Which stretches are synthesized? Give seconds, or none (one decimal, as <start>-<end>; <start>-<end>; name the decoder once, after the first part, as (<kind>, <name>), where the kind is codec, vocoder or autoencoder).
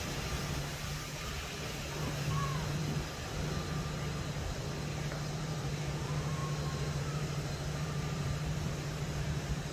0.0-2.8 (vocoder, BigVGAN v2); 5.3-6.4; 7.0-9.7